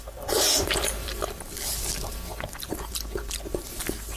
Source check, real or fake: real